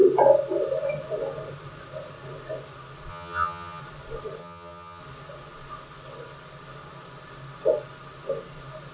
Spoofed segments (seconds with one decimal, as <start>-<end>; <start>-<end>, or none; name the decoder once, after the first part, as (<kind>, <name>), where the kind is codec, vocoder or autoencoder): 3.1-3.8 (vocoder, HiFi-GAN); 4.4-5.0